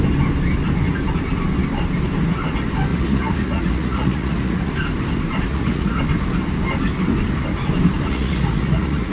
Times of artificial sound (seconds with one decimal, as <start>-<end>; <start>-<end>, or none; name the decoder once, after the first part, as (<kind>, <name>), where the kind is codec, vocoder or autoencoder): 2.9-4.7 (vocoder, Vocos); 5.5-6.0; 8.1-9.1